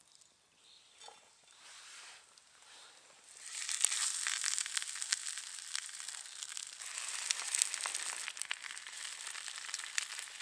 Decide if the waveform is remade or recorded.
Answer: recorded